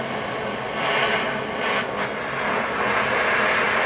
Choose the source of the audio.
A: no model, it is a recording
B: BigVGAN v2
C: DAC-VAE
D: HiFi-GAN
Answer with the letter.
A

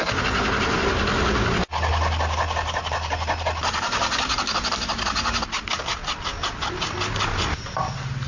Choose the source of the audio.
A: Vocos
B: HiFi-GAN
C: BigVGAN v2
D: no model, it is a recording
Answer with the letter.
D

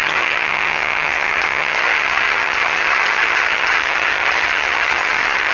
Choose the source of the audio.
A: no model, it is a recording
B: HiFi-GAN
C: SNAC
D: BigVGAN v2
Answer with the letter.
B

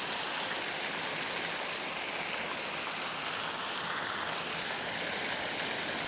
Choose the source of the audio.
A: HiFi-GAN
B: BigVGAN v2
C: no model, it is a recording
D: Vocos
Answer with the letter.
C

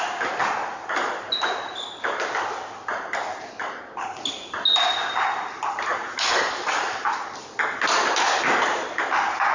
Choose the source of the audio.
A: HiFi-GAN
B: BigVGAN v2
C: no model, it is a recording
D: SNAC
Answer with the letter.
C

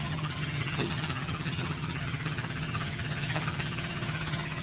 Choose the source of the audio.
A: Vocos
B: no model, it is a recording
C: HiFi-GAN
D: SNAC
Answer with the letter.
C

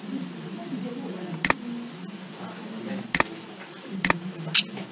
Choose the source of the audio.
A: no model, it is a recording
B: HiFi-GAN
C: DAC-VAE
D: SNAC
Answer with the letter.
A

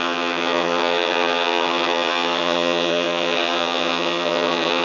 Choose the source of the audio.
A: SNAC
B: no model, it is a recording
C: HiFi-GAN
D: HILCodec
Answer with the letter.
C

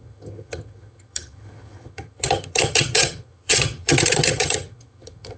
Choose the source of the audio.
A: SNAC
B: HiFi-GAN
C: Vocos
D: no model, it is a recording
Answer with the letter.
B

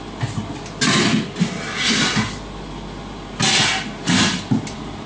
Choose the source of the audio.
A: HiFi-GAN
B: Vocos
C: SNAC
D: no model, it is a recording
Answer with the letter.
D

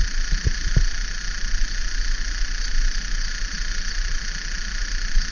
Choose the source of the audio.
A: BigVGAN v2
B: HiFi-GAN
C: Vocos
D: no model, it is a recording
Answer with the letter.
D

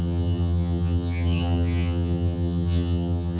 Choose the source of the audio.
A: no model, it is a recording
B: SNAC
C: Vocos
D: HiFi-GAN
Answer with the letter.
D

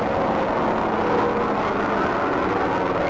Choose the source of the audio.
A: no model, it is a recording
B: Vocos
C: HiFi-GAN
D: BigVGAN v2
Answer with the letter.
A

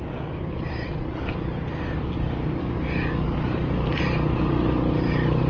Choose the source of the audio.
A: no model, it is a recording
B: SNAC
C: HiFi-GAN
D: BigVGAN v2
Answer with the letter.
A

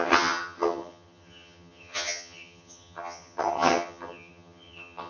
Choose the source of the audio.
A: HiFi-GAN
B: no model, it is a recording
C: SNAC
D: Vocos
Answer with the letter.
A